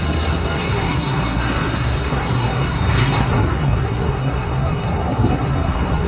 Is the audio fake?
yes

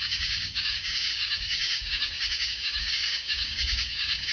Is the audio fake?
yes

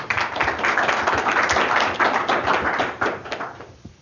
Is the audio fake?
no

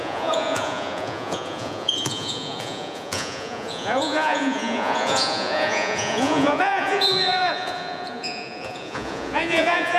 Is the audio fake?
yes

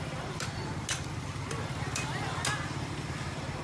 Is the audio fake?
no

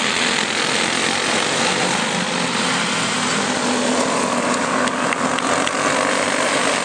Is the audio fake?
no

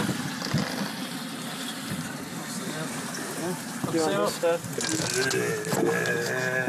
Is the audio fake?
no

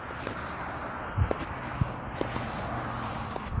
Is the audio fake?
no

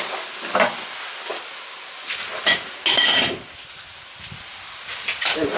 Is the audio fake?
no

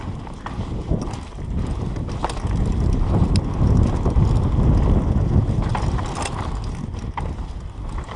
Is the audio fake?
no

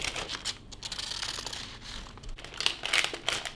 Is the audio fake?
no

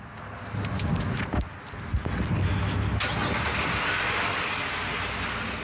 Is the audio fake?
no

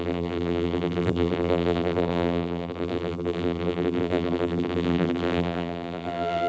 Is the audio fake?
yes